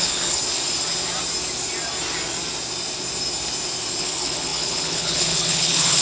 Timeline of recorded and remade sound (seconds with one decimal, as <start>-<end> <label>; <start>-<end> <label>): 0.0-0.4 remade; 0.4-4.0 recorded; 4.0-6.0 remade